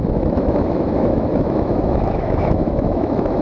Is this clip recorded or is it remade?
remade